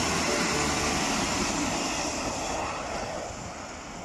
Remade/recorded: recorded